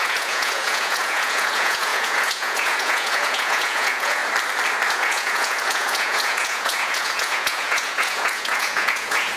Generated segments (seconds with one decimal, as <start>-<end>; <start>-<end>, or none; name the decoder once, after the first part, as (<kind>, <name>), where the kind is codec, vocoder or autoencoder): 0.0-4.2 (vocoder, Vocos); 4.9-9.4